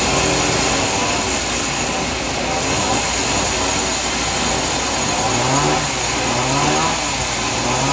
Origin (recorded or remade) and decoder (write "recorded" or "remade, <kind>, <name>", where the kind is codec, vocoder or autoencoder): recorded